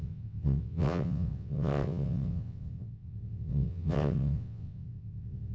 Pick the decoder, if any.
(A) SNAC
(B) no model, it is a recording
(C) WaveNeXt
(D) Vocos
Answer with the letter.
C